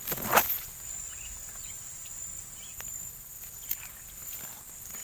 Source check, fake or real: real